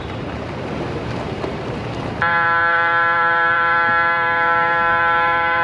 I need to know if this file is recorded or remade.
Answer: remade